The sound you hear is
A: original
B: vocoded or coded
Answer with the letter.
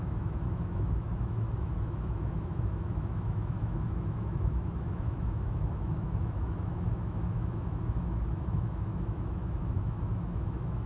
B